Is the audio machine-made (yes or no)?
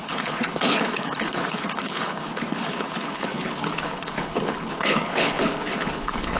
yes